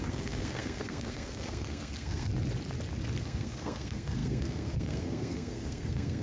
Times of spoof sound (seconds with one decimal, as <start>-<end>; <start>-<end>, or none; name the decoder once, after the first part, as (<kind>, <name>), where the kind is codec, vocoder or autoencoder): 0.0-2.3 (codec, SNAC); 3.2-6.2